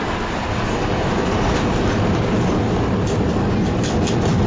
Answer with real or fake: real